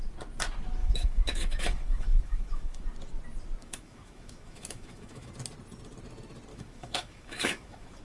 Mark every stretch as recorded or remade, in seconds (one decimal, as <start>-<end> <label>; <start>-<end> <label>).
0.0-0.8 recorded; 0.8-2.8 remade; 2.8-3.6 recorded; 3.6-5.3 remade; 5.3-6.5 recorded; 6.5-8.0 remade